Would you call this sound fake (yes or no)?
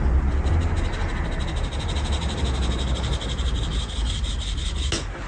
no